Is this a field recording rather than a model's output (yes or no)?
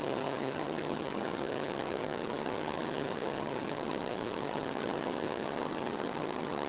no